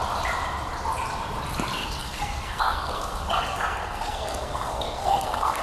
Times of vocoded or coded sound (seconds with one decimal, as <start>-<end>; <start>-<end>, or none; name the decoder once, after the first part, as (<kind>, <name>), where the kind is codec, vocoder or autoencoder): 1.8-5.6 (codec, SNAC)